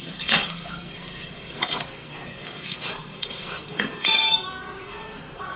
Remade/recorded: remade